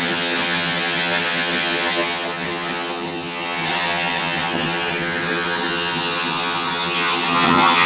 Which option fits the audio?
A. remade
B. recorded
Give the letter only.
A